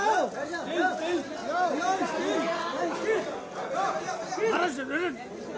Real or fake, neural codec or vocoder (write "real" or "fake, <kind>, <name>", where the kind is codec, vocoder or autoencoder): real